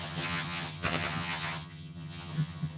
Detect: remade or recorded remade